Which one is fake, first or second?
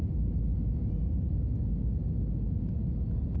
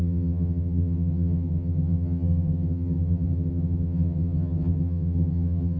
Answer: second